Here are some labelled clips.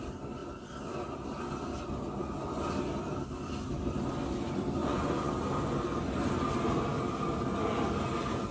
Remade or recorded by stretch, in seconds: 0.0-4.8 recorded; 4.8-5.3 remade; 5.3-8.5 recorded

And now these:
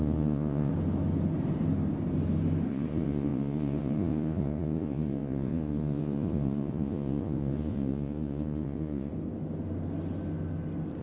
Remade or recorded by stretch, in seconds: 0.0-0.7 remade; 0.7-2.7 recorded; 2.7-9.1 remade; 9.1-11.0 recorded

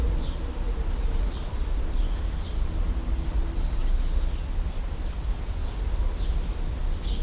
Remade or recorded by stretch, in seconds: 0.0-7.2 recorded

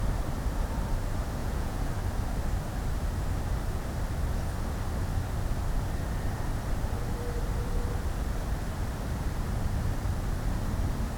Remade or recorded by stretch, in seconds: 0.0-1.4 recorded; 1.4-1.9 remade; 1.9-11.2 recorded